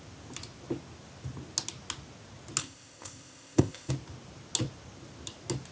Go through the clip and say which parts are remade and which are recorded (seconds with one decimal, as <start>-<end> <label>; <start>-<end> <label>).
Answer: 0.0-2.6 recorded; 2.6-3.9 remade; 3.9-5.7 recorded